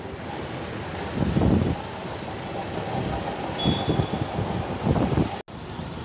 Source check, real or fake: real